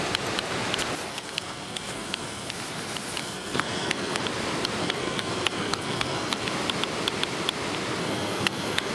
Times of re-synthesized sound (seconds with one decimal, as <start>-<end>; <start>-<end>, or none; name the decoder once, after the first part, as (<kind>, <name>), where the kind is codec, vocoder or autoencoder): 1.1-2.5 (codec, SNAC); 3.2-4.2; 4.8-6.5; 8.0-8.9